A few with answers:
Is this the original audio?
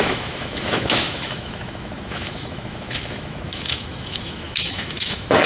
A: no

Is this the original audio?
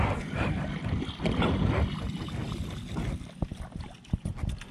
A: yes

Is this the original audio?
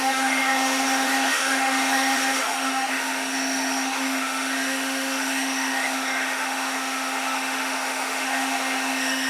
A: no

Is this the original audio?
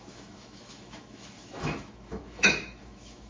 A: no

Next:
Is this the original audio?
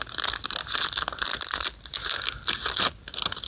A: yes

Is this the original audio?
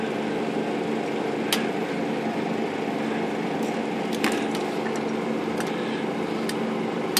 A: yes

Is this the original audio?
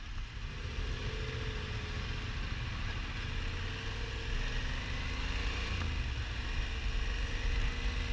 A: yes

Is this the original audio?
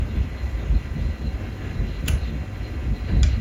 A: yes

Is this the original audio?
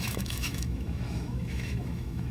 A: no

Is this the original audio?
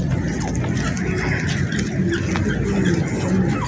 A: yes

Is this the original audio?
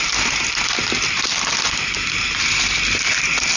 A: yes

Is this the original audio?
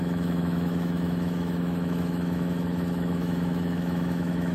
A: no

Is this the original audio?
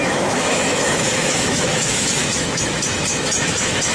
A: no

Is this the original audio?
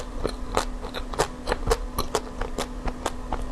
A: yes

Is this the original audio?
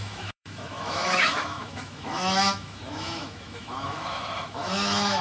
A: no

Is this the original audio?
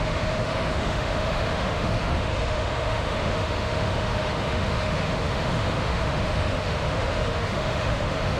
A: no